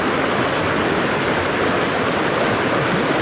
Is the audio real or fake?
real